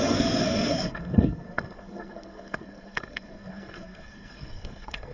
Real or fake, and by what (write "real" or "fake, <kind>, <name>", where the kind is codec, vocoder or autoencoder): fake, codec, SNAC